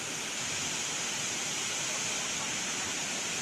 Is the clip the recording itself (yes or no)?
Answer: yes